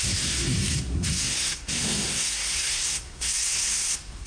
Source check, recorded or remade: remade